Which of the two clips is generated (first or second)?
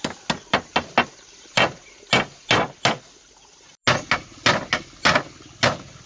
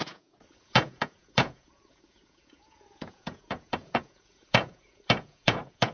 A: second